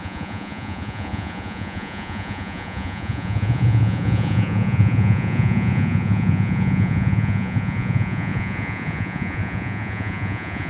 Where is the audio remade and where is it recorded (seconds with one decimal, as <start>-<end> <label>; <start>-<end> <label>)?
0.0-10.7 remade